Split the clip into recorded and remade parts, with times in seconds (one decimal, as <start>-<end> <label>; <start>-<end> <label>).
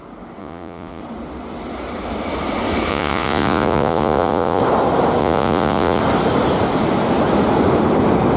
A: 0.0-0.4 recorded; 0.4-1.0 remade; 1.0-2.9 recorded; 2.9-4.6 remade; 4.6-5.2 recorded; 5.2-6.0 remade; 6.0-8.4 recorded